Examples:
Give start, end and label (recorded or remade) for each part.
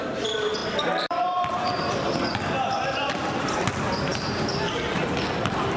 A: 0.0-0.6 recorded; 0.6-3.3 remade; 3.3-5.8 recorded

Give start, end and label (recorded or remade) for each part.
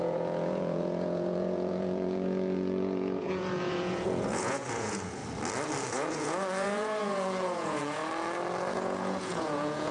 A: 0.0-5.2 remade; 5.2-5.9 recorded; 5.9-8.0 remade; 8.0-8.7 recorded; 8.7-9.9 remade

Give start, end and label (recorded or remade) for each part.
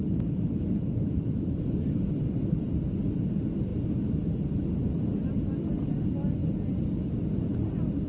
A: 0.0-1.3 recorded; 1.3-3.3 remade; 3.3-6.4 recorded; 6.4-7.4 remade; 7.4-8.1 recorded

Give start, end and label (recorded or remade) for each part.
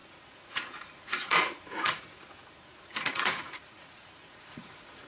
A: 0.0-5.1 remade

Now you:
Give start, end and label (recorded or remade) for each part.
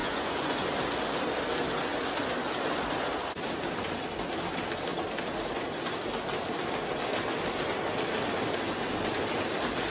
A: 0.0-0.7 remade; 0.7-9.9 recorded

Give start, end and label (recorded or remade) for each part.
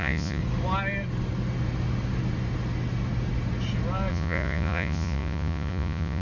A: 0.0-0.4 remade; 0.4-4.1 recorded; 4.1-6.2 remade